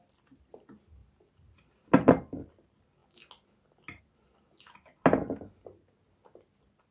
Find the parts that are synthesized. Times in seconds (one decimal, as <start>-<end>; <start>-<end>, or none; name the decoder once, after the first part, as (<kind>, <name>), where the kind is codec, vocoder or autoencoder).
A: none